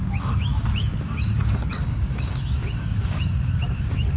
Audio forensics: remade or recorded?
remade